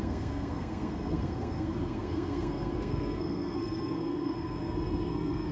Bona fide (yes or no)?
no